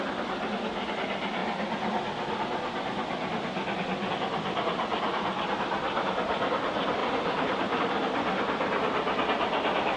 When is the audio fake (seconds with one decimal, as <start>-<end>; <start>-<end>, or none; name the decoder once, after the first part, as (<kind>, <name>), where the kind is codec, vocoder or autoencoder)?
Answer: 0.0-1.4 (vocoder, BigVGAN v2); 4.1-10.0